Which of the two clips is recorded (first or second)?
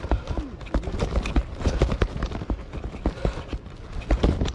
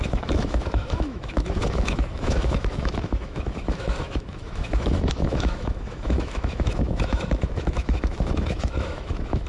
first